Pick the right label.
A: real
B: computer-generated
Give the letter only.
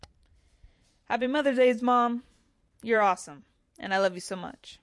B